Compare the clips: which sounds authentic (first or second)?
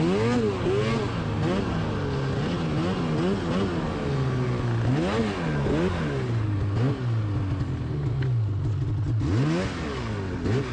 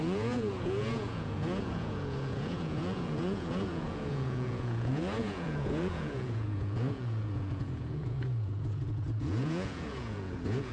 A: first